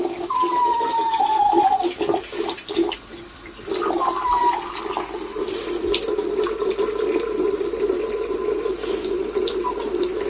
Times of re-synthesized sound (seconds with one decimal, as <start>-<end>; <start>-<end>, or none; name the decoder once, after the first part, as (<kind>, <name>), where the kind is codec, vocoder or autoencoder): none